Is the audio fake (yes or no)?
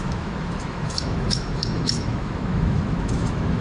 yes